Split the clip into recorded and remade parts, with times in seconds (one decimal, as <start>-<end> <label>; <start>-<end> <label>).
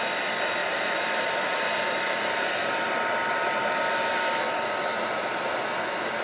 0.0-0.6 recorded; 0.6-3.8 remade; 3.8-4.9 recorded; 4.9-5.5 remade; 5.5-6.2 recorded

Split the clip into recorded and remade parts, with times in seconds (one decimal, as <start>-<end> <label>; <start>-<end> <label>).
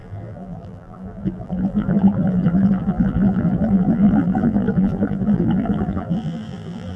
0.0-7.0 remade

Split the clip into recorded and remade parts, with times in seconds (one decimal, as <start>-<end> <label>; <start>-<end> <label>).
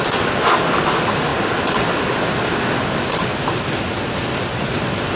0.0-5.2 recorded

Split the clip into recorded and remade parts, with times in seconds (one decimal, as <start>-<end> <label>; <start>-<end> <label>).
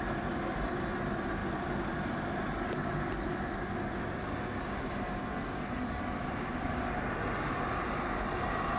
0.0-6.2 recorded; 6.2-7.0 remade; 7.0-8.8 recorded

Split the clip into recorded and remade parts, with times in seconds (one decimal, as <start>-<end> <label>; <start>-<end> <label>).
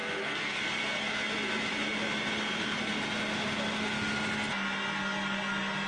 0.0-0.6 remade; 0.6-5.9 recorded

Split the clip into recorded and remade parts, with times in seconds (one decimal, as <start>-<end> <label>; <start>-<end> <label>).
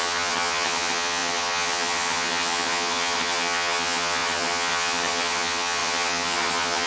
0.0-6.9 remade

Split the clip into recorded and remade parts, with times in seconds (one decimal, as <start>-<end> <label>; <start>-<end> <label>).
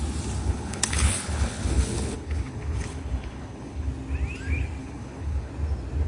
0.0-0.4 recorded; 0.4-3.9 remade; 3.9-4.8 recorded; 4.8-5.5 remade; 5.5-6.1 recorded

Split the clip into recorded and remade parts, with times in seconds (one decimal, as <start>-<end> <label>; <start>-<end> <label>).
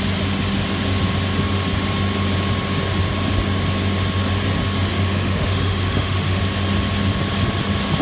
0.0-4.9 recorded; 4.9-6.4 remade; 6.4-8.0 recorded